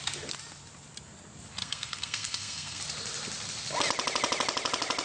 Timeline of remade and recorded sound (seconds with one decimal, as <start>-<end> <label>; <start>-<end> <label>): 0.0-1.6 recorded; 1.6-2.8 remade; 2.8-5.0 recorded